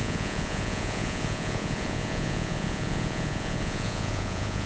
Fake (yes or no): yes